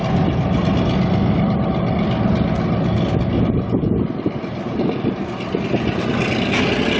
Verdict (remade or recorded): recorded